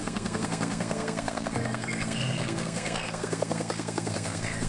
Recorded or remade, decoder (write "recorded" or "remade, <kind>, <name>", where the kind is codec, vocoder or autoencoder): remade, codec, SNAC